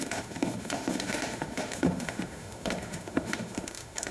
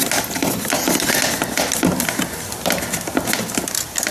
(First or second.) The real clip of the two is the second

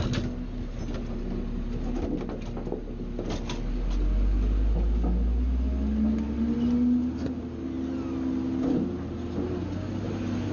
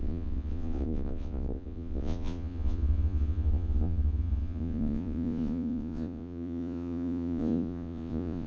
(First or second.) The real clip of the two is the first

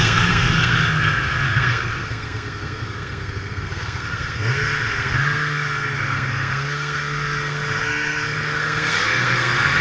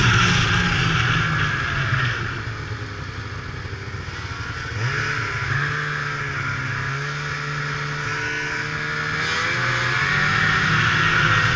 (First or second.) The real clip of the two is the second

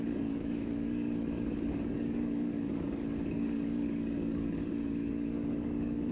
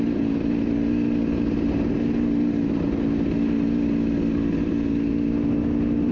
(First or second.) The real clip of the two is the second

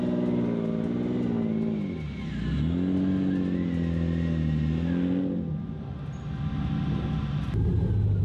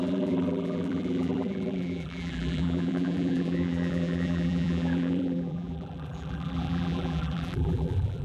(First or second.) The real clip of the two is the first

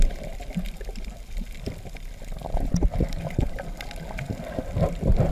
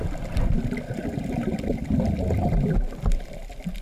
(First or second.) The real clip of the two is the second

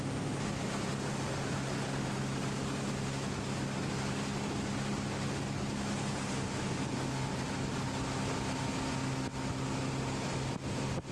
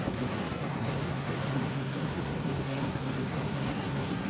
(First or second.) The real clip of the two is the first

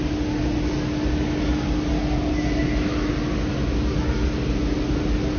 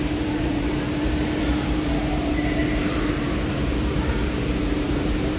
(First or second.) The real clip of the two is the first